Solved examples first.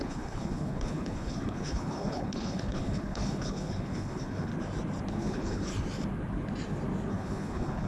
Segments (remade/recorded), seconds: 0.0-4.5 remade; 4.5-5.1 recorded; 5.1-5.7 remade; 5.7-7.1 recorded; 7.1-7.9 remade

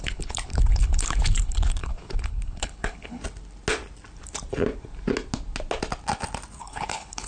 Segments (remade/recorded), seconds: 0.0-3.2 remade; 3.2-6.6 recorded; 6.6-7.3 remade